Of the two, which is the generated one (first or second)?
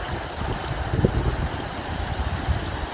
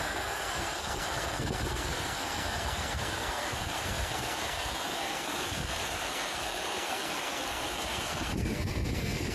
second